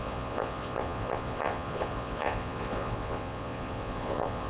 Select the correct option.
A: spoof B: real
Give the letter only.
A